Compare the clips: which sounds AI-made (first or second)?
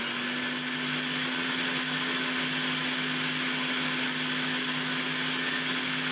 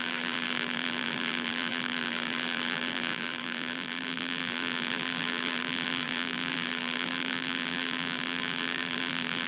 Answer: second